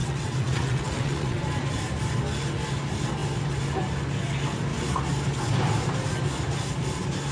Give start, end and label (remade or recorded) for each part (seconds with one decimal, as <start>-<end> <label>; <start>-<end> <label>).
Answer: 0.0-1.4 remade; 1.4-7.3 recorded